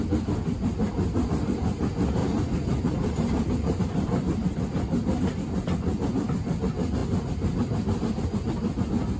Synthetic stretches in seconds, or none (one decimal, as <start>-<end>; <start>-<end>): 2.2-3.8